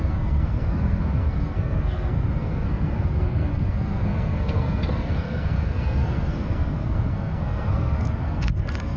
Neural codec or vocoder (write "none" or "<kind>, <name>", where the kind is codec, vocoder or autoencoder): codec, SNAC